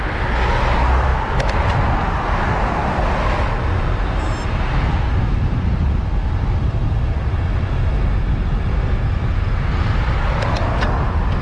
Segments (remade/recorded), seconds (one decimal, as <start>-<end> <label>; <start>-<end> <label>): 0.0-11.4 recorded